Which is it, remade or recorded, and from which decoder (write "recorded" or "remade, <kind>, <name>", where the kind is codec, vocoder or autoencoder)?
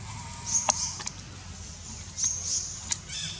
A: recorded